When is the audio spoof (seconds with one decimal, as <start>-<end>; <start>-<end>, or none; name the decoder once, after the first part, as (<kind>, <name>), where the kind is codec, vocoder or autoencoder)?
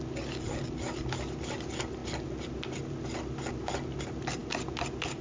none